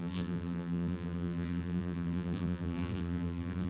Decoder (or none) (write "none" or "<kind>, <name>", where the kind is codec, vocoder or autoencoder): vocoder, BigVGAN v2